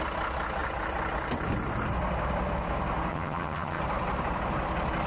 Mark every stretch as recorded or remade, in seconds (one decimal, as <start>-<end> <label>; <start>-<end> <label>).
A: 0.0-3.1 recorded; 3.1-3.8 remade; 3.8-5.1 recorded